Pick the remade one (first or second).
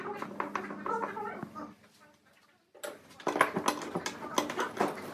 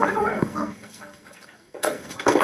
second